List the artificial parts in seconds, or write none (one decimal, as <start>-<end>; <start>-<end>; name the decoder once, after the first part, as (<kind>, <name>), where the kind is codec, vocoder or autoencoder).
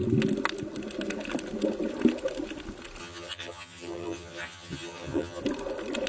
3.0-5.4 (vocoder, HiFi-GAN)